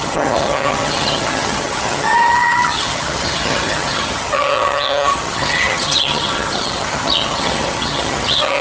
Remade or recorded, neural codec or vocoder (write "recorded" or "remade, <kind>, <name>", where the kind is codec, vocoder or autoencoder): remade, vocoder, HiFi-GAN